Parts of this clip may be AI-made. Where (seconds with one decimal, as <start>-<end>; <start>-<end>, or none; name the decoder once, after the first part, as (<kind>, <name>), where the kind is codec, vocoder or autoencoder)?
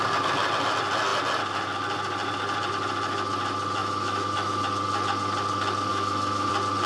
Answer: 3.8-4.6 (autoencoder, DAC-VAE); 5.9-6.5